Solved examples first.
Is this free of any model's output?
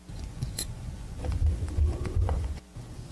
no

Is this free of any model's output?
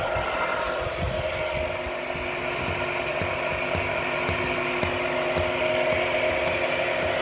yes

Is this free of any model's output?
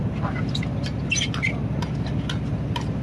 yes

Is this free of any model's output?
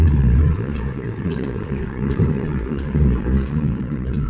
no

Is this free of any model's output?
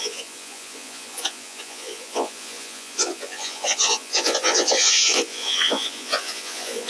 no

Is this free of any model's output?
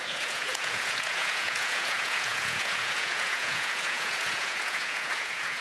no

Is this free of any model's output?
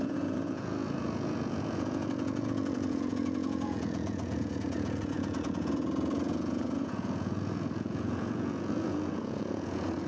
no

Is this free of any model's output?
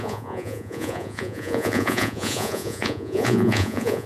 no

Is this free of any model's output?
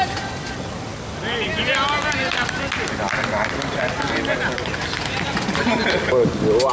yes